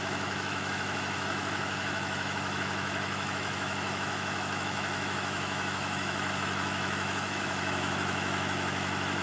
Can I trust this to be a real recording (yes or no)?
no